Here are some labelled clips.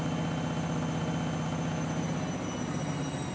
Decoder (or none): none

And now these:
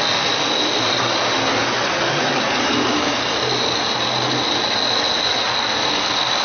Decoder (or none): none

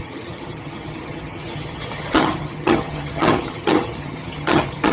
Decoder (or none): vocoder, HiFi-GAN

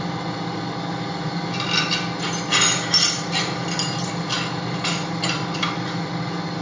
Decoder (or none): none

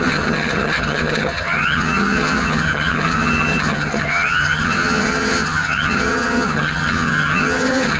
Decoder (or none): vocoder, HiFi-GAN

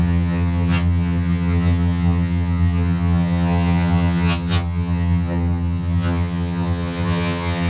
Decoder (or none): vocoder, HiFi-GAN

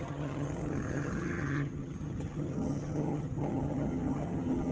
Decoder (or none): vocoder, HiFi-GAN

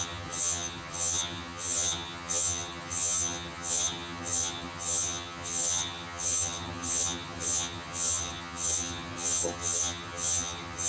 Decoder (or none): vocoder, HiFi-GAN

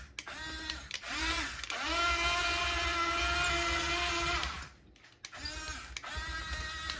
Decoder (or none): none